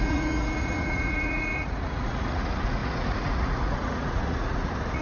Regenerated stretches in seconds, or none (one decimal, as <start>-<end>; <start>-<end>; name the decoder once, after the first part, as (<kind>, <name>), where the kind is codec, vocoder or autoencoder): 0.0-5.0 (vocoder, Vocos)